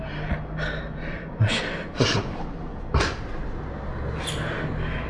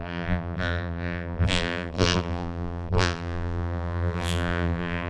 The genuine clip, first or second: first